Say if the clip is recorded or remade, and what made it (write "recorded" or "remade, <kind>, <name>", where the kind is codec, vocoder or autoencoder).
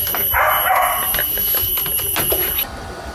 recorded